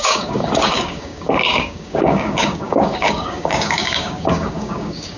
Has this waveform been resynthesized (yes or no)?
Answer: yes